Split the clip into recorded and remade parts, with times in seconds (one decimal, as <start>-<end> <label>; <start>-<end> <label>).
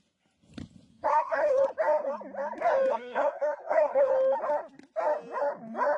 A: 0.0-0.9 recorded; 0.9-1.6 remade; 1.6-2.9 recorded; 2.9-4.1 remade; 4.1-6.0 recorded